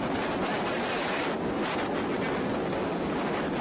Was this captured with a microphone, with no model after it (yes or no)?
no